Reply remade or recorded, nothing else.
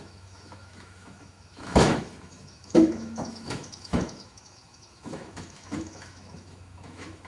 remade